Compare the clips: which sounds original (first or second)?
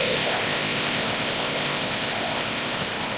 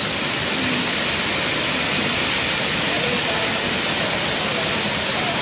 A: second